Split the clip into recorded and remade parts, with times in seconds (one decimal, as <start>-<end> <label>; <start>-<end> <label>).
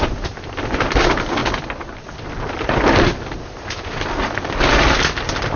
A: 0.0-5.6 recorded